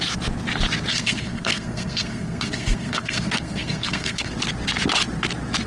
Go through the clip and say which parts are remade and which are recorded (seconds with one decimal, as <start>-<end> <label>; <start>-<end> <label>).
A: 0.0-0.9 recorded; 0.9-4.3 remade; 4.3-5.7 recorded